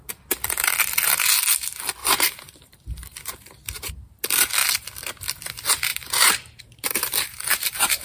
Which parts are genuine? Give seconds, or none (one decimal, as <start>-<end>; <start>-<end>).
0.0-2.0; 3.9-5.9